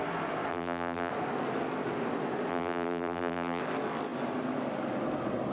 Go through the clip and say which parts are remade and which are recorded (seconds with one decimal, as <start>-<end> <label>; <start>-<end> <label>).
0.0-0.5 recorded; 0.5-1.1 remade; 1.1-2.5 recorded; 2.5-3.6 remade; 3.6-5.5 recorded